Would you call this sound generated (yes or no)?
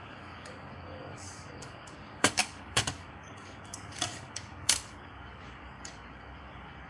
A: yes